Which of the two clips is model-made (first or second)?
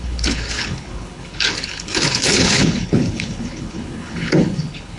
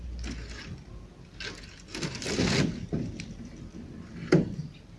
first